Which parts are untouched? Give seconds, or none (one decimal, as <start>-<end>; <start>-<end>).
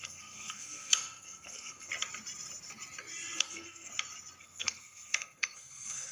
1.9-3.4; 3.9-4.4